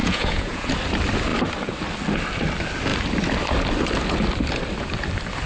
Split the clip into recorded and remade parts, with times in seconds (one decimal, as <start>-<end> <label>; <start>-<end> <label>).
0.0-0.7 remade; 0.7-5.5 recorded